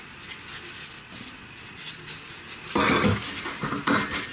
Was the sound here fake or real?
real